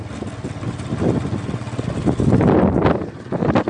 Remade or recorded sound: recorded